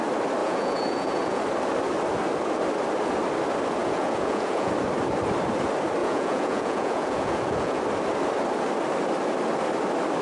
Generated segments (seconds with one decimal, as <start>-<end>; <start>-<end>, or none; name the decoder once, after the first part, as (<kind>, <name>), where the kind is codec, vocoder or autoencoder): 0.4-1.4 (vocoder, Vocos); 3.8-4.7; 6.0-7.8